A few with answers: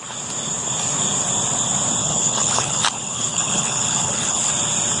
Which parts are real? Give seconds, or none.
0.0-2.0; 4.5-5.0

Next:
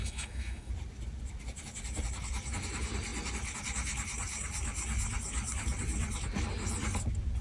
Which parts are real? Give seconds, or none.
0.7-7.4

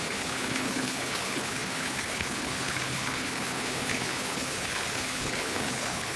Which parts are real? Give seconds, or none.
none

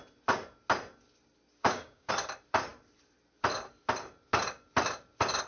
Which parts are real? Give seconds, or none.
0.0-1.6; 2.1-5.5

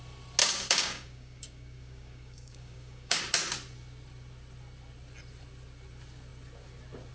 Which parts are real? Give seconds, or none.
0.0-0.4; 3.2-7.1

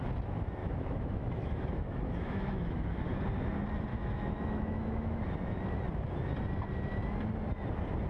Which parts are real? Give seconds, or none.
0.0-0.6; 3.1-3.9; 5.2-8.1

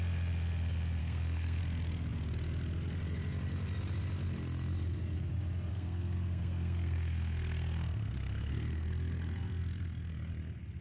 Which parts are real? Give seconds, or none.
0.0-1.0; 1.6-5.7; 10.3-10.8

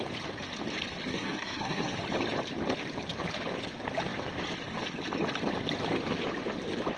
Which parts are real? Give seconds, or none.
0.0-1.1; 2.0-7.0